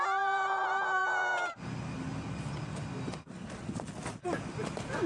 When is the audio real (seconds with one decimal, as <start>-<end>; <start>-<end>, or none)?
0.0-5.1